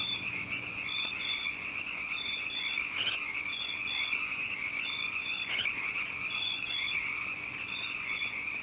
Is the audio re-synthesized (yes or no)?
yes